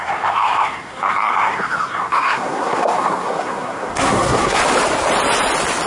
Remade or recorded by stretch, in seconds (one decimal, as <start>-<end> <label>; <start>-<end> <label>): 0.0-4.6 remade; 4.6-5.9 recorded